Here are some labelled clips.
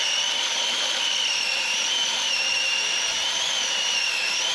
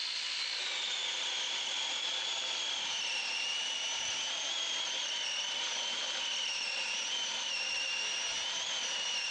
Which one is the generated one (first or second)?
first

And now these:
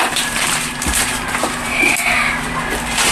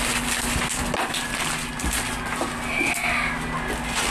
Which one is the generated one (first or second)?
first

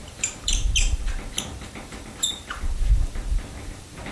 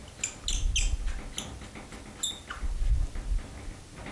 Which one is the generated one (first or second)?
first